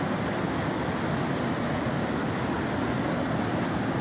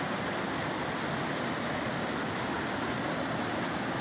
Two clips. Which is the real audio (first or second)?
first